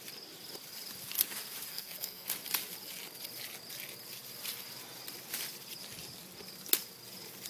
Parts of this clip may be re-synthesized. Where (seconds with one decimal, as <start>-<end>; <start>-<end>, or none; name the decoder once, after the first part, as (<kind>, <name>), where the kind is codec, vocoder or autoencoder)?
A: 1.7-2.3 (codec, SNAC)